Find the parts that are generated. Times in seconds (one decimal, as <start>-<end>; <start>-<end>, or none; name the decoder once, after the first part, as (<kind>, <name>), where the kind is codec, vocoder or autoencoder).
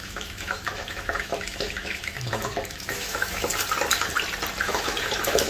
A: 0.0-3.5 (autoencoder, DAC-VAE); 4.6-5.5